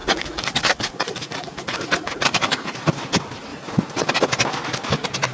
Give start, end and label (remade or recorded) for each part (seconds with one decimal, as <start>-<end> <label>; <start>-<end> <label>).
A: 0.0-2.9 remade; 2.9-3.5 recorded; 3.5-4.1 remade; 4.1-5.3 recorded